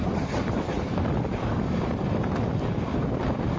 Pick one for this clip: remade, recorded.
recorded